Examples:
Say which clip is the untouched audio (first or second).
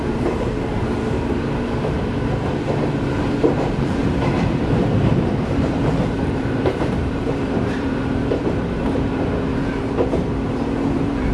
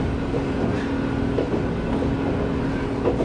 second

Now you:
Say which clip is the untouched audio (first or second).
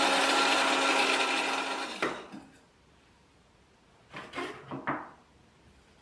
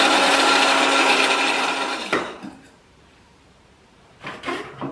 first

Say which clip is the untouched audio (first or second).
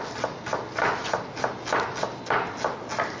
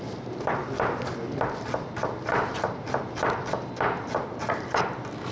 first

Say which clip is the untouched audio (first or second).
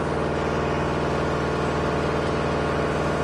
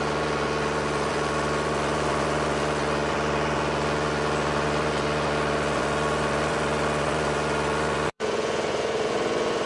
first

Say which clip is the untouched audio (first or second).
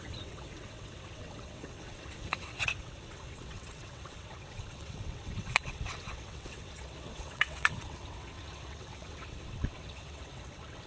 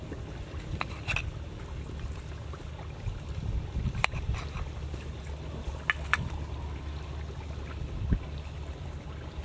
second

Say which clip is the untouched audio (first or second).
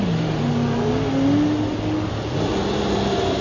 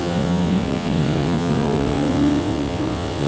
first